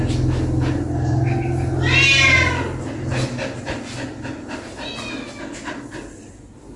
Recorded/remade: recorded